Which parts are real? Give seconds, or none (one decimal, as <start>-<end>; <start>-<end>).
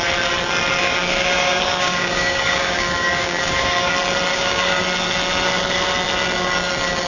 0.0-0.8; 3.9-4.3; 4.8-7.1